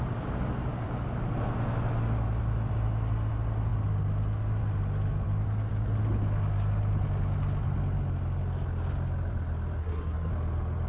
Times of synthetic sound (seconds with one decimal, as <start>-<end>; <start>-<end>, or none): 9.8-10.3